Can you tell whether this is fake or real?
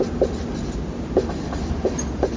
real